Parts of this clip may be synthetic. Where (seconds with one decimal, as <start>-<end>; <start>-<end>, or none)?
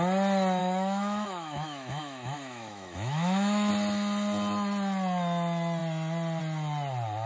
0.6-3.7